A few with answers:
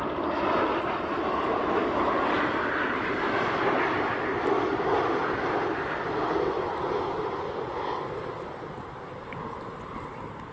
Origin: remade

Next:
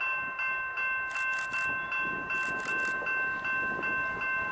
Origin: recorded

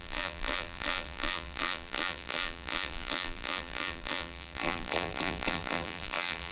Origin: remade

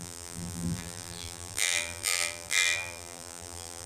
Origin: remade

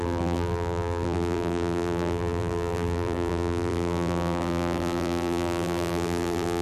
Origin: remade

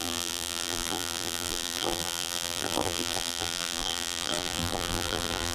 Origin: remade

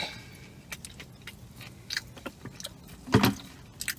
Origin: recorded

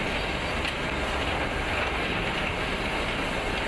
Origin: recorded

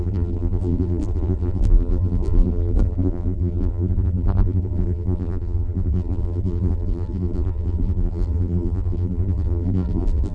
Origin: remade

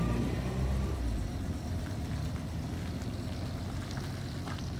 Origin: recorded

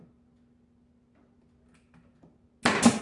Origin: recorded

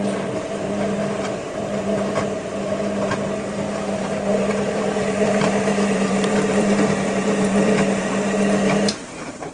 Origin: remade